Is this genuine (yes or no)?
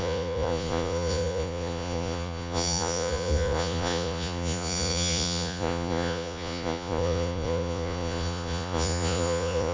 no